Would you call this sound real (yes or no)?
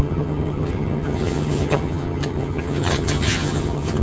no